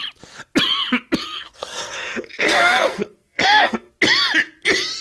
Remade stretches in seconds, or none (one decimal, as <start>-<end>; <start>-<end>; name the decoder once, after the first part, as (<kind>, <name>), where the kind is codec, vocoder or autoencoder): 1.2-3.9 (codec, SNAC)